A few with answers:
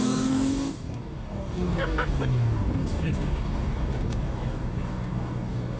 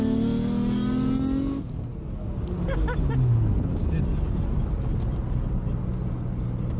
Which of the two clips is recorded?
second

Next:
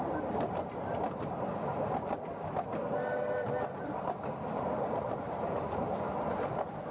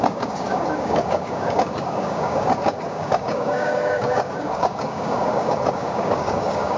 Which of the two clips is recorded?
first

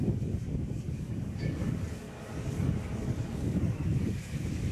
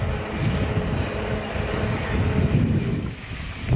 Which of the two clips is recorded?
second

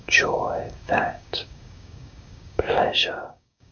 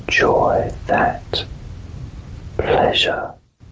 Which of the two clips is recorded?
second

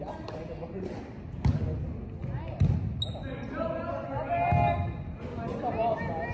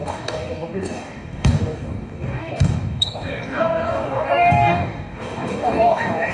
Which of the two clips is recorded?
first